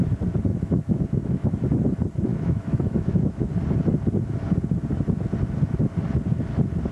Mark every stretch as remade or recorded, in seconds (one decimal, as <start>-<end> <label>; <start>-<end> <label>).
0.0-0.5 recorded; 0.5-1.5 remade; 1.5-2.3 recorded; 2.3-3.5 remade; 3.5-6.9 recorded